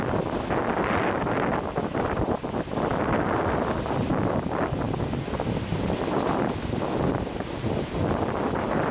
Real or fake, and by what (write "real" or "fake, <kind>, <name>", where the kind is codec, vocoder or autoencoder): real